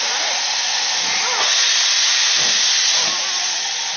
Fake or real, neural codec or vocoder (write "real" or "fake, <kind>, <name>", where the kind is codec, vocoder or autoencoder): real